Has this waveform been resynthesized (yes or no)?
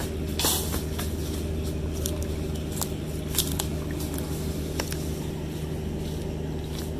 no